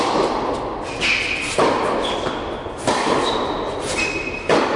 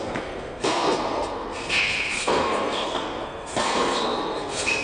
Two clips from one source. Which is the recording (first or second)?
first